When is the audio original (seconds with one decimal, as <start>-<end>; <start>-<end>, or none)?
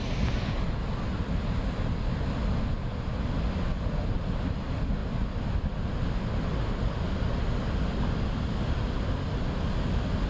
0.0-10.3